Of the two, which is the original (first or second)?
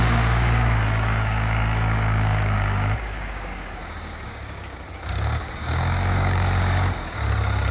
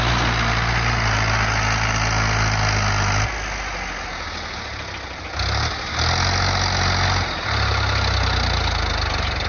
second